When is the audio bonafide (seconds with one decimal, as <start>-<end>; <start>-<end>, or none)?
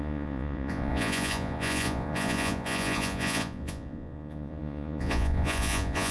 none